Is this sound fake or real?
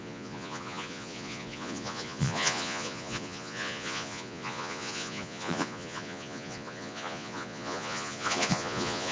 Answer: fake